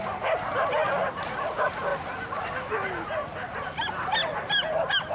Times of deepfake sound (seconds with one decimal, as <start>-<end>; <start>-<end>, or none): none